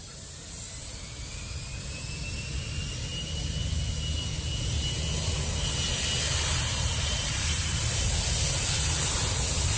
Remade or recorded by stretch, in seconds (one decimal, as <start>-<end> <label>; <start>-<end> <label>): 0.0-6.7 recorded; 6.7-8.1 remade; 8.1-9.8 recorded